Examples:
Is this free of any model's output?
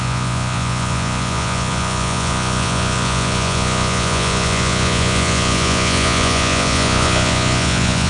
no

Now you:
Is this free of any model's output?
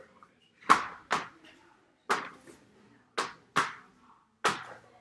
yes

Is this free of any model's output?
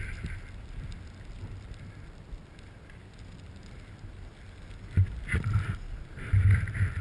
yes